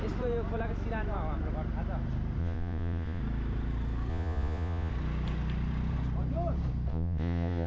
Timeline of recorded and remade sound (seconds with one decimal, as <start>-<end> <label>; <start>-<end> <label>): 0.0-2.4 recorded; 2.4-3.2 remade; 3.2-4.1 recorded; 4.1-4.9 remade; 4.9-6.9 recorded; 6.9-7.7 remade

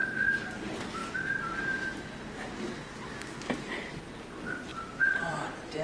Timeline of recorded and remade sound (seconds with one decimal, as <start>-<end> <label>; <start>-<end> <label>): 0.0-1.0 remade; 1.0-3.6 recorded; 3.6-5.8 remade

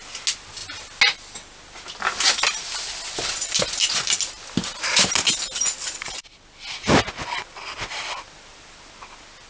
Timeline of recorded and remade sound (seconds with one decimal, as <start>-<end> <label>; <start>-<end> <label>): 0.0-9.5 recorded

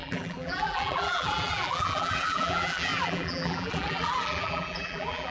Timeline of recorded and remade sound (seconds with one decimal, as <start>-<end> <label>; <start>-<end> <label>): 0.0-5.3 remade

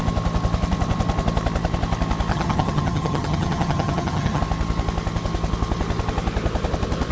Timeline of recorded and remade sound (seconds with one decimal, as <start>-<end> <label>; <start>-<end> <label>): 0.0-2.3 recorded; 2.3-4.4 remade; 4.4-7.1 recorded

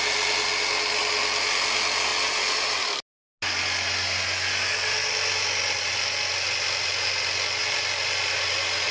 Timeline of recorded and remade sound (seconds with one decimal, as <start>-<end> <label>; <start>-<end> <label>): 0.0-8.9 recorded

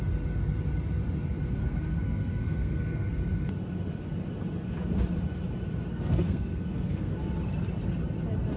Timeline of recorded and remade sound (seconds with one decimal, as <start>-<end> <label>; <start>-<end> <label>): 0.0-1.6 recorded; 1.6-3.1 remade; 3.1-5.9 recorded; 5.9-7.1 remade; 7.1-8.6 recorded